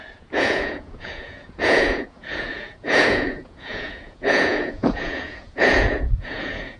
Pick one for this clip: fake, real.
fake